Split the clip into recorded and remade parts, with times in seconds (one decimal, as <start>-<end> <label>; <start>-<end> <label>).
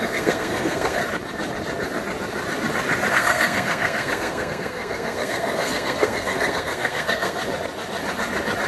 0.0-1.0 remade; 1.0-3.1 recorded; 3.1-7.4 remade; 7.4-8.7 recorded